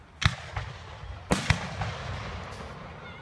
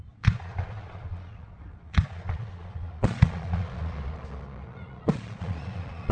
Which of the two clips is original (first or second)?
first